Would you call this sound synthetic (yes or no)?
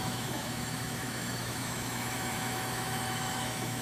yes